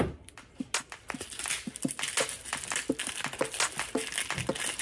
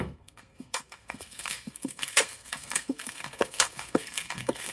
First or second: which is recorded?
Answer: first